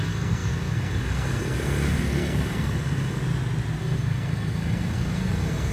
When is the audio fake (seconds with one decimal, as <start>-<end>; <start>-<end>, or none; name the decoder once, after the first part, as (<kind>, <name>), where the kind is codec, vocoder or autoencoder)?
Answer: 0.0-3.2 (codec, SNAC); 3.8-5.7